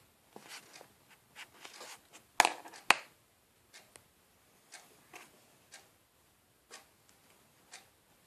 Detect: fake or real real